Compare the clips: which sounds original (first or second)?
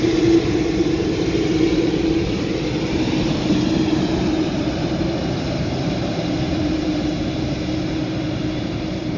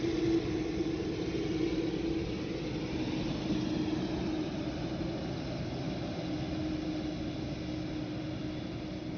second